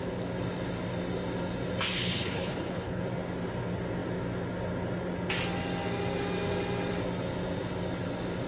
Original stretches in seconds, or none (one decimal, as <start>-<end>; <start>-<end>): 0.0-1.9; 3.0-8.5